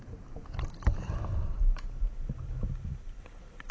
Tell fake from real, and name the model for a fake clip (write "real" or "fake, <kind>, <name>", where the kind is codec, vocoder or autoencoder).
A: real